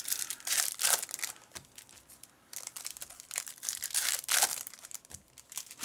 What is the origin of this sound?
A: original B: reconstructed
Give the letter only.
A